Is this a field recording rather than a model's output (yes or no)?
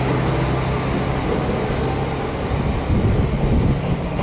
yes